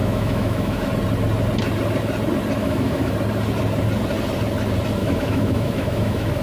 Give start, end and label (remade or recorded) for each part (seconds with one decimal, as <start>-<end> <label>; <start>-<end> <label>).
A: 0.0-0.9 remade; 0.9-2.6 recorded; 2.6-3.1 remade; 3.1-5.0 recorded; 5.0-6.4 remade